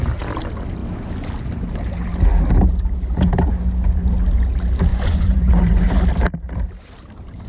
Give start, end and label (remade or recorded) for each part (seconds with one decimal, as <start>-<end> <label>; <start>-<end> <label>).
0.0-4.9 recorded; 4.9-6.0 remade; 6.0-7.5 recorded